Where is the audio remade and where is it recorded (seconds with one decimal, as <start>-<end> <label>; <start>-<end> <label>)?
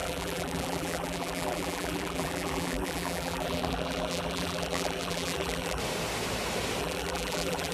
0.0-5.8 remade; 5.8-6.8 recorded; 6.8-7.7 remade